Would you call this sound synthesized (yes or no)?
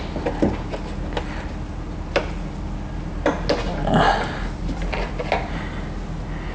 no